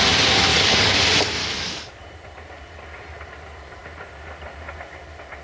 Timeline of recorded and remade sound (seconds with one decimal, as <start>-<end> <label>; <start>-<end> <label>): 0.0-0.5 recorded; 0.5-1.0 remade; 1.0-1.4 recorded; 1.4-2.0 remade; 2.0-5.4 recorded